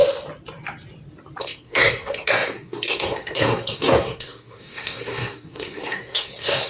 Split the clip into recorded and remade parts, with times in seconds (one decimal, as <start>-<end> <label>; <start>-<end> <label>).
0.0-1.4 recorded; 1.4-6.7 remade